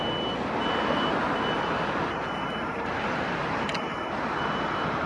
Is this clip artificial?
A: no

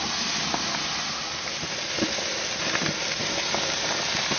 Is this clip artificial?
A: yes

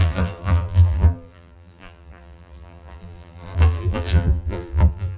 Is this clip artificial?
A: yes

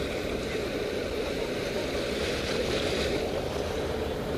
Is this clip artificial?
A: yes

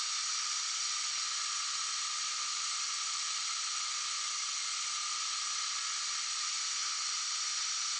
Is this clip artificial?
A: yes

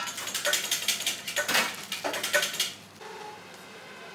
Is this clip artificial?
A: no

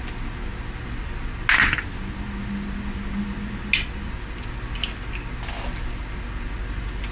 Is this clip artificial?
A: no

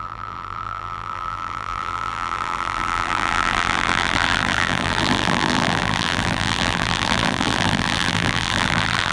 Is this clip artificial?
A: yes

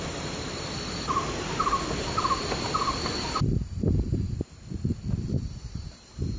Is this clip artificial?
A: yes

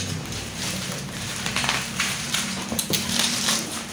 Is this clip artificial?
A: yes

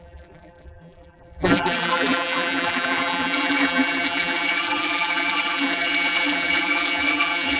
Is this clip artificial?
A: yes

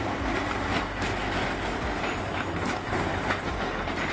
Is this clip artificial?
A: no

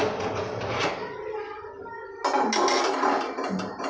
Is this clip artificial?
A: no